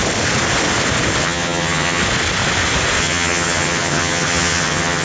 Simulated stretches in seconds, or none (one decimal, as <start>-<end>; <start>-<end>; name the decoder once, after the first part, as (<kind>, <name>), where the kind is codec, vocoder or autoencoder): 1.2-2.0 (vocoder, HiFi-GAN); 3.0-5.0